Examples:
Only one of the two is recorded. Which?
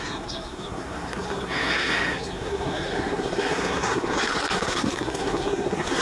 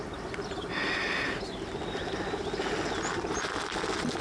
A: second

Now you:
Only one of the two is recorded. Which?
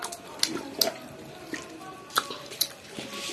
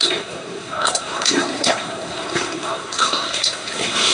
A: first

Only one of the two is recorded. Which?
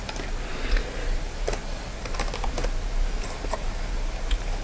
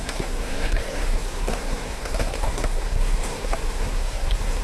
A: first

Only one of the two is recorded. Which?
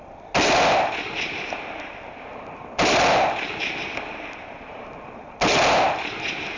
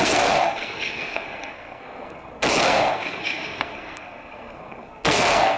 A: first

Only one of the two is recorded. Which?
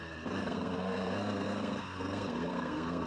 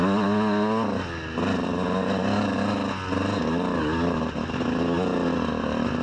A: second